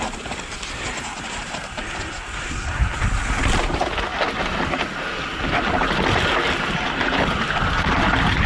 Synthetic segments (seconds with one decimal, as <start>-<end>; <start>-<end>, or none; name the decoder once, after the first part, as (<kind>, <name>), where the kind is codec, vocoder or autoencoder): none